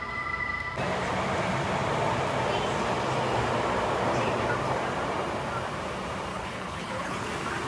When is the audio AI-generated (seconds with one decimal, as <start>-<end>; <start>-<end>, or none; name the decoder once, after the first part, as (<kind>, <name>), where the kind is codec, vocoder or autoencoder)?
6.3-7.3 (codec, HILCodec)